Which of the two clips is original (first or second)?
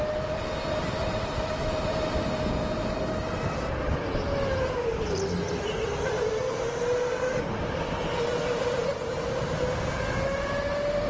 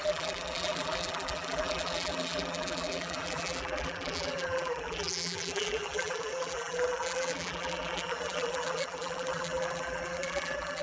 first